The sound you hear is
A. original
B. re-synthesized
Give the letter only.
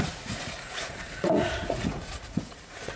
B